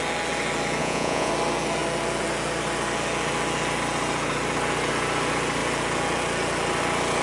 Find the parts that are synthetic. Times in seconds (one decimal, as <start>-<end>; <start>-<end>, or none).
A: 0.8-1.3